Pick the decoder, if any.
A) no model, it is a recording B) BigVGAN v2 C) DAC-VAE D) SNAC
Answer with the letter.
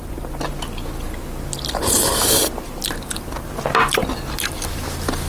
A